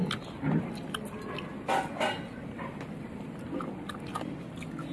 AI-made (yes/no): no